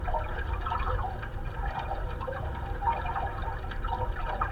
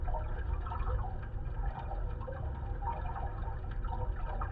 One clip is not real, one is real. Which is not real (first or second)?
first